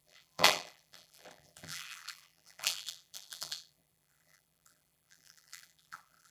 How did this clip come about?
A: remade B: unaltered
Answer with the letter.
A